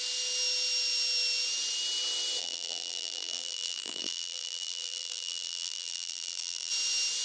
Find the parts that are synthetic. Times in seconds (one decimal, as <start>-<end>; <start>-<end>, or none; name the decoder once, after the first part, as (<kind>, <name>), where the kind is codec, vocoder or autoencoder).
2.4-6.7 (vocoder, BigVGAN v2)